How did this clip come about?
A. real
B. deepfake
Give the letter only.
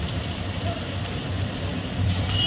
B